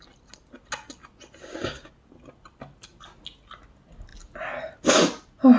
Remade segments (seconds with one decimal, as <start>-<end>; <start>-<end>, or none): 1.4-1.9

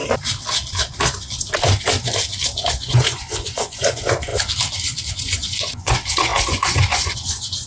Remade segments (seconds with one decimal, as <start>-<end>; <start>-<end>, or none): 2.7-4.3; 5.1-7.7

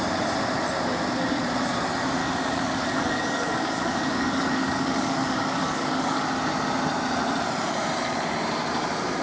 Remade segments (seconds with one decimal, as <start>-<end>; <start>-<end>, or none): 2.2-6.2

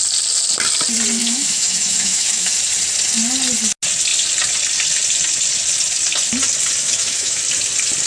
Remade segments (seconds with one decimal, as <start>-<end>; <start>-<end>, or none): 1.2-2.5; 6.8-7.4